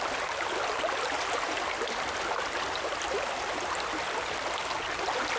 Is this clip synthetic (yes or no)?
no